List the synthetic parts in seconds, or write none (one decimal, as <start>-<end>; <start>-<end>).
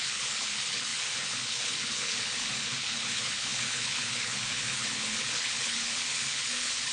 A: 0.0-6.9